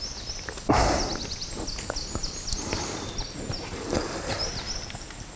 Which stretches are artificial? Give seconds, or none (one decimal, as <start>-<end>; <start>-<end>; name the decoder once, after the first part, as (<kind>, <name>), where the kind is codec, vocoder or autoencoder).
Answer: none